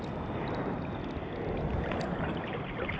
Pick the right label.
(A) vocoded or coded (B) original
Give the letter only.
B